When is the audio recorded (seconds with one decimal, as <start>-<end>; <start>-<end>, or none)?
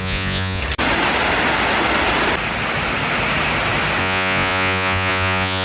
0.6-4.0